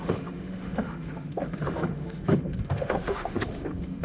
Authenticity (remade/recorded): remade